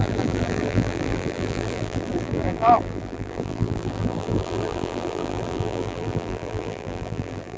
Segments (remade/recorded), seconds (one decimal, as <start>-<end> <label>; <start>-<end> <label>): 0.0-7.6 remade